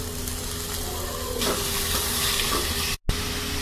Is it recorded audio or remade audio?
recorded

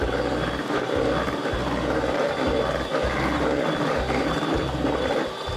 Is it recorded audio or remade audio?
remade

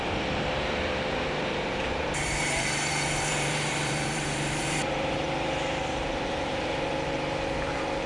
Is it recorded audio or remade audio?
remade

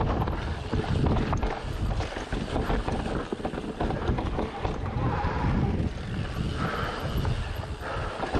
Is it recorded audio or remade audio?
recorded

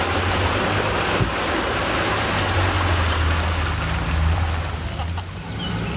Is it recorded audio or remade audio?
recorded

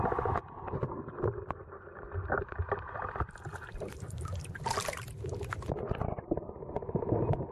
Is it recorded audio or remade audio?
recorded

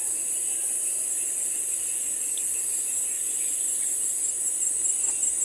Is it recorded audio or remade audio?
recorded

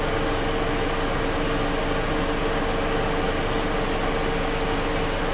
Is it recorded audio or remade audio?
recorded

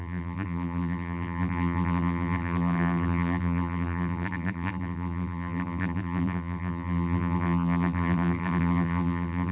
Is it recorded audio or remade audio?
remade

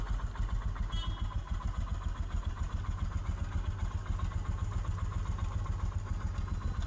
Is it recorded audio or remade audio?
recorded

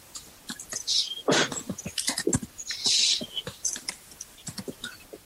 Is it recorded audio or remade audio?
recorded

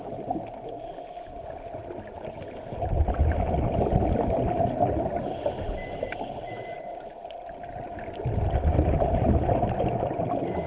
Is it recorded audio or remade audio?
remade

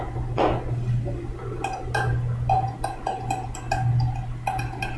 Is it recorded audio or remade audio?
recorded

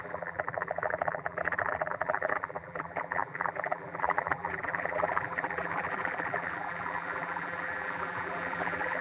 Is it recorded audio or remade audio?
remade